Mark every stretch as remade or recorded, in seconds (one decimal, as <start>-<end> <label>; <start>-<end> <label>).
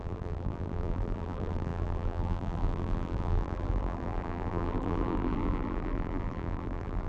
0.0-7.1 remade